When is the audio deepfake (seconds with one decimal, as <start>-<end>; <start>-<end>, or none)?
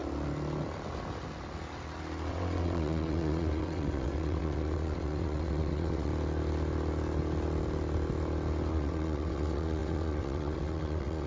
2.3-6.1; 8.7-11.3